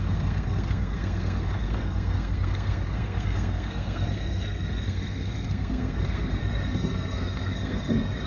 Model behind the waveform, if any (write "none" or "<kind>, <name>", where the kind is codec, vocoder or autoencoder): codec, SNAC